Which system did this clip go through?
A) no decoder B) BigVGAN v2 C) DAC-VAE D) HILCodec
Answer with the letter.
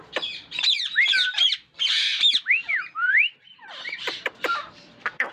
B